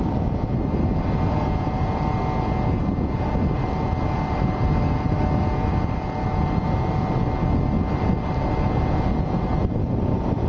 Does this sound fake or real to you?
real